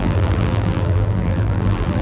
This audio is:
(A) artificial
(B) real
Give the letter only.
A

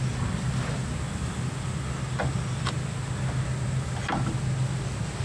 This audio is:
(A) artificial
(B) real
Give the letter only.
B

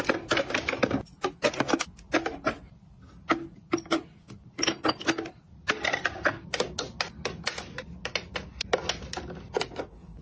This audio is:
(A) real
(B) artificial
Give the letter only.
A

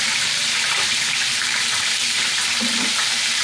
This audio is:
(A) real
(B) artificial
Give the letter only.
B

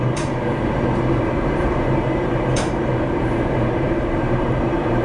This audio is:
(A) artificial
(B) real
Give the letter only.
A